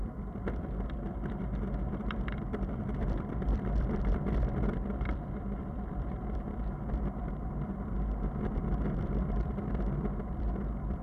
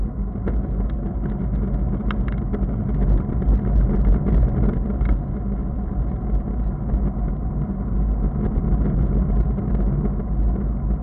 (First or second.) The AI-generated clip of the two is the first